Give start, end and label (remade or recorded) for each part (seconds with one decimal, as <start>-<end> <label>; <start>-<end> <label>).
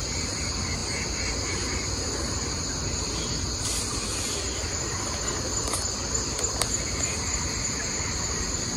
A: 0.0-8.8 recorded